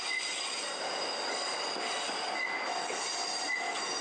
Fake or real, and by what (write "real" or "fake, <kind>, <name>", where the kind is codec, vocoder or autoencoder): real